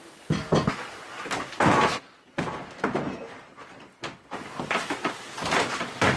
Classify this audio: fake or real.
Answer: real